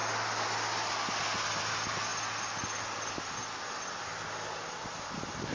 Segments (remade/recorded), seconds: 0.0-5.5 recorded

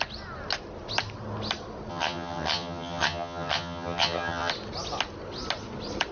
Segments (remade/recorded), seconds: 0.0-1.9 recorded; 1.9-4.5 remade; 4.5-6.1 recorded